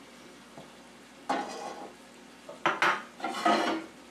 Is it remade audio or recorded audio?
recorded